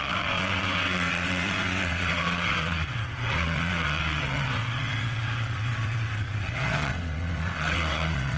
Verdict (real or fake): fake